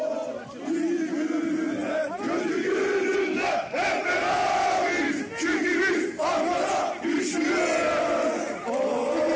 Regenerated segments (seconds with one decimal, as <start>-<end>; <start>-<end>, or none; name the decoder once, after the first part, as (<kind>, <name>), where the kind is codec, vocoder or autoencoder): none